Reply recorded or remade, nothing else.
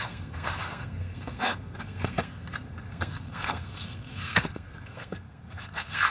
remade